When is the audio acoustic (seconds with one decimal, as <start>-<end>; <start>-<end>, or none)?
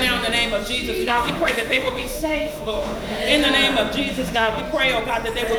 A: 0.0-1.0; 3.2-4.1; 4.6-5.6